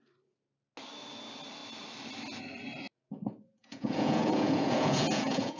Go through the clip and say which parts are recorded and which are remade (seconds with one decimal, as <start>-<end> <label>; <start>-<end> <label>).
0.0-2.9 recorded; 2.9-5.6 remade